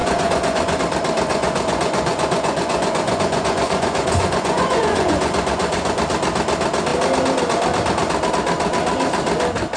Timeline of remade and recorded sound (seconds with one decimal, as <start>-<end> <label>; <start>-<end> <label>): 0.0-0.8 remade; 0.8-1.3 recorded; 1.3-6.0 remade; 6.0-9.8 recorded